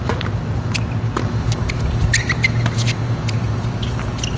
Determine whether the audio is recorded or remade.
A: recorded